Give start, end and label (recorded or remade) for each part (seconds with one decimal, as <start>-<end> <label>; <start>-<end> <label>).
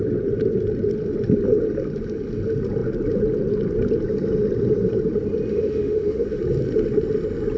0.0-5.5 recorded; 5.5-6.4 remade; 6.4-7.6 recorded